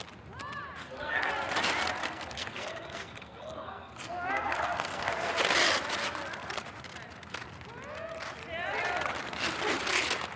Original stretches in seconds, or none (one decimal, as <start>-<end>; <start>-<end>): 0.0-0.8; 1.3-2.0; 5.3-10.4